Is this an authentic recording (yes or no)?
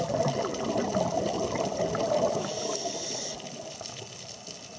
yes